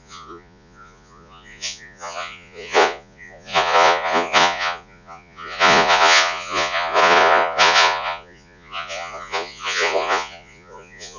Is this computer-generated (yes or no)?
yes